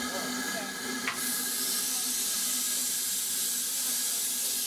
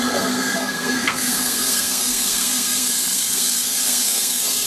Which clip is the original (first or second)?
first